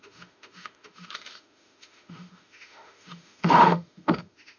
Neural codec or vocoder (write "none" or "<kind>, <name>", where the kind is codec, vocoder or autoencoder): autoencoder, DAC-VAE